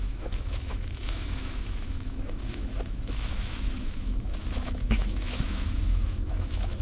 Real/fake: fake